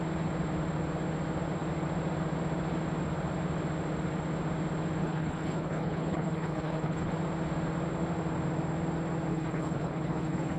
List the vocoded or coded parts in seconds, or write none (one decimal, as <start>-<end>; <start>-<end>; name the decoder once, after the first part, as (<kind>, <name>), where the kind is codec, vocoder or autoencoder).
5.0-7.1 (codec, HILCodec); 9.3-10.6